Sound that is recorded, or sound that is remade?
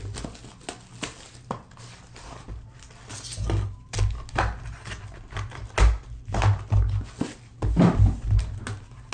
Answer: recorded